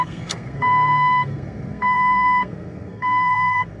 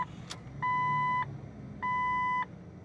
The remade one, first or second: first